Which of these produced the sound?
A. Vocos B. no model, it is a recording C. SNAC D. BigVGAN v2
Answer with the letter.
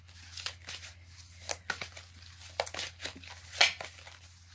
B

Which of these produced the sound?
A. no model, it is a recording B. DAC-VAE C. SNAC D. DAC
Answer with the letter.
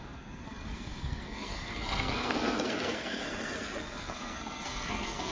C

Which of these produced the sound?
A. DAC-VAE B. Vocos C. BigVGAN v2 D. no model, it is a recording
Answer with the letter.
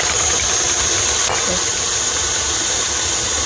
D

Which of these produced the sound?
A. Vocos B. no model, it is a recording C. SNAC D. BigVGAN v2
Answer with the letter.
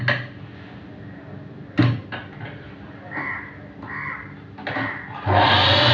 B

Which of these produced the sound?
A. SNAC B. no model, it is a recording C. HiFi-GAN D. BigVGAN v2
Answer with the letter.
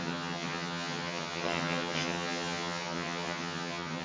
C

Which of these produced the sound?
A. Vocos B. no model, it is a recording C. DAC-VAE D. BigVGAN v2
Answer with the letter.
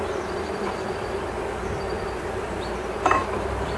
D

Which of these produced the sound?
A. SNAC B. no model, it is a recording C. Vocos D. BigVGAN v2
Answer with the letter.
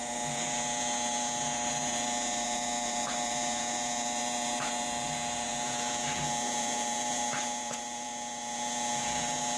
C